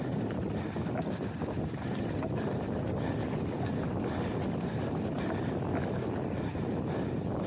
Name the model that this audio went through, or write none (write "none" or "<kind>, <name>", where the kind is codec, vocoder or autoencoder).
none